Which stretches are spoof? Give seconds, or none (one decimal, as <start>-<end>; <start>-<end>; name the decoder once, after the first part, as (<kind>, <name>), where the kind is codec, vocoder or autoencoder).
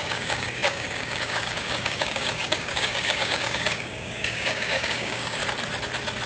0.0-5.4 (codec, DAC)